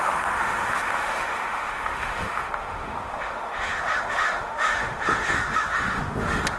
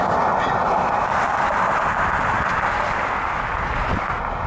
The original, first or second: second